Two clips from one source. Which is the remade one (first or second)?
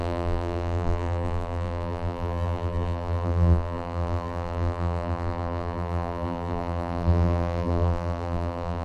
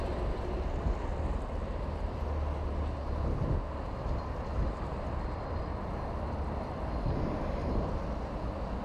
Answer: first